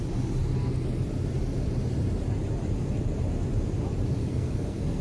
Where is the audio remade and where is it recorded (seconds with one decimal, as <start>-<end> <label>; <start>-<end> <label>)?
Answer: 0.0-4.2 recorded; 4.2-5.0 remade